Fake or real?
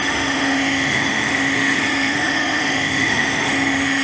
fake